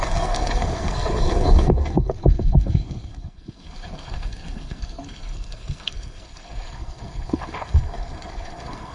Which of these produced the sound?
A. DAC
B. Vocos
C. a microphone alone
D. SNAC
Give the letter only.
D